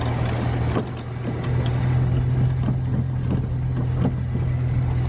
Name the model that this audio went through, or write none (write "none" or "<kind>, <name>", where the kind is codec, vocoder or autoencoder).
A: none